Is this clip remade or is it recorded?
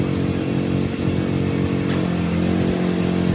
recorded